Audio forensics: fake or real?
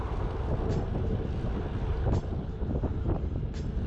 real